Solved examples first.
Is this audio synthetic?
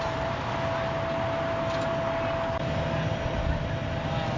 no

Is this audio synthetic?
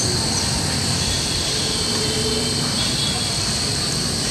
no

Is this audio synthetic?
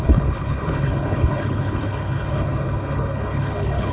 yes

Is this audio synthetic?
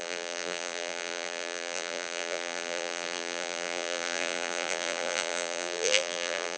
yes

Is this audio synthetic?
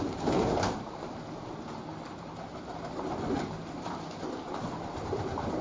no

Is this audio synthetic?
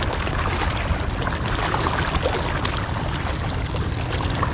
no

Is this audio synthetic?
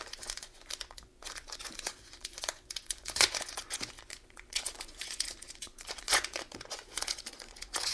yes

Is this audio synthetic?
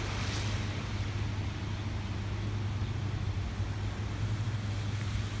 no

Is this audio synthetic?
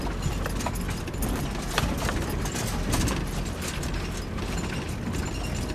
no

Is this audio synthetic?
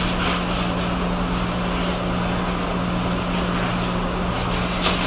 no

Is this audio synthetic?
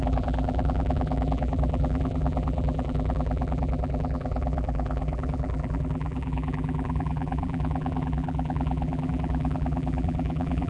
yes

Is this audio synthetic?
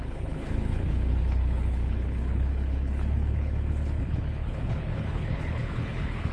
yes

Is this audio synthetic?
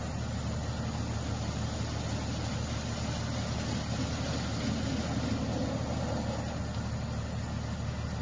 no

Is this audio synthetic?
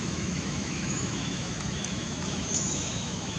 yes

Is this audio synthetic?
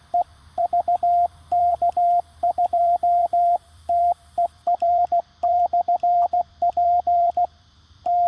yes